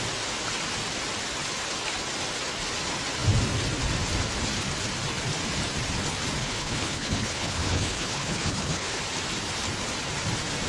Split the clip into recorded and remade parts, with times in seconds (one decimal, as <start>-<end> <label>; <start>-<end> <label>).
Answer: 0.0-6.4 recorded; 6.4-9.0 remade; 9.0-10.7 recorded